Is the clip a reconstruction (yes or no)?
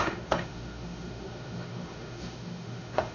yes